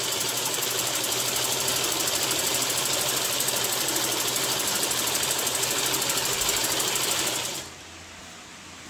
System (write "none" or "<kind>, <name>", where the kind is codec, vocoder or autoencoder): none